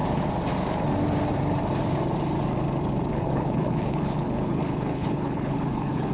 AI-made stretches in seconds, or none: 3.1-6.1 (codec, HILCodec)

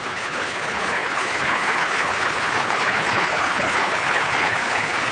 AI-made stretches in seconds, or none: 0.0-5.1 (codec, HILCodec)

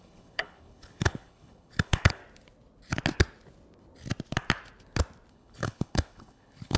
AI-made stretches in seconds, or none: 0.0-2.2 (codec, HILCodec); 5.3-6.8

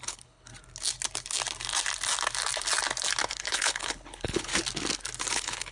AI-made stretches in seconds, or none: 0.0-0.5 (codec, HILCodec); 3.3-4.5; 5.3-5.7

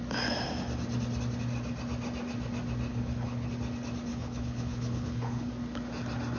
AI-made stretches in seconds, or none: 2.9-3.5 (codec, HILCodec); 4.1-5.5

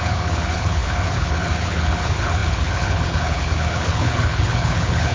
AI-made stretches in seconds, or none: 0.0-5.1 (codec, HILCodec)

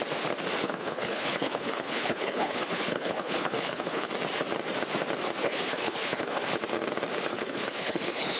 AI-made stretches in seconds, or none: 0.6-4.1 (codec, HILCodec); 5.4-6.4; 7.3-8.4

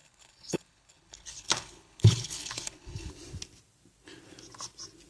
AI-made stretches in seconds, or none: 0.0-3.1 (codec, HILCodec)